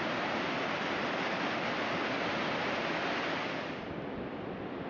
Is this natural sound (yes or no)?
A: yes